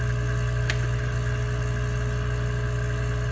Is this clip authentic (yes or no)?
yes